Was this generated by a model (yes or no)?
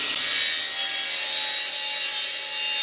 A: no